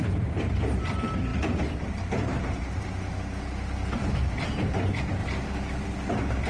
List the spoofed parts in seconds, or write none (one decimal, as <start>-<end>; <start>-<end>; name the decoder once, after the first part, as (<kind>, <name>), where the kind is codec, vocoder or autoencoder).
none